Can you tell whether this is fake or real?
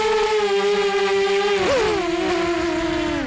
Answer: real